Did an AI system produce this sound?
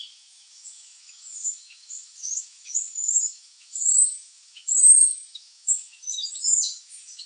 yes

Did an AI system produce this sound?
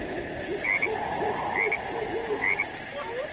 no